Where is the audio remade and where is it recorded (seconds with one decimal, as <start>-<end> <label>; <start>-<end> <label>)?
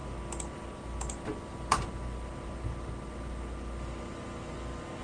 0.0-5.0 recorded